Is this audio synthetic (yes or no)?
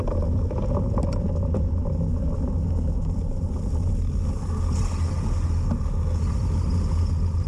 no